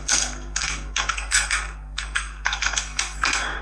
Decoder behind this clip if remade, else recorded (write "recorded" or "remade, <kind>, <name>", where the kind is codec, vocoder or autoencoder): remade, codec, SNAC